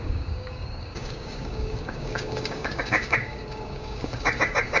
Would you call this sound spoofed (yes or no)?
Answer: yes